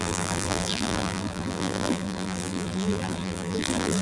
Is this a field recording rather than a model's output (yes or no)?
no